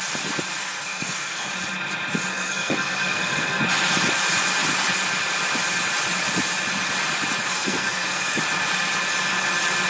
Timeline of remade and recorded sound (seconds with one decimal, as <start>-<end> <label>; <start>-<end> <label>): 0.0-0.6 recorded; 0.6-1.5 remade; 1.5-2.3 recorded; 2.3-3.6 remade; 3.6-7.4 recorded; 7.4-8.4 remade; 8.4-9.9 recorded